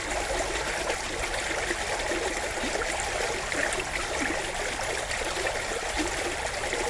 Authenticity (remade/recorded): recorded